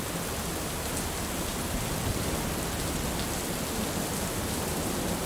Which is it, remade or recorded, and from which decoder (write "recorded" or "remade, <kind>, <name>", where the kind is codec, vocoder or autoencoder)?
recorded